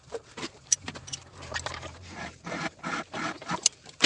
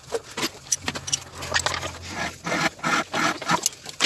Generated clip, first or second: first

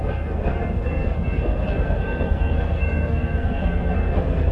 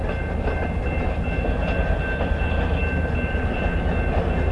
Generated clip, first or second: first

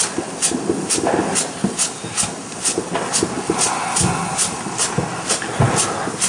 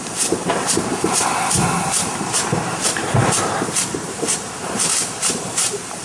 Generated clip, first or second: second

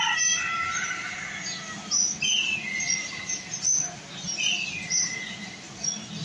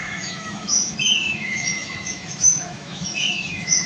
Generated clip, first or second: second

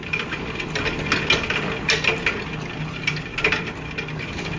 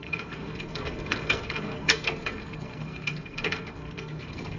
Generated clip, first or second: second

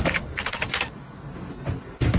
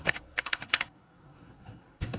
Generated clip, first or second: second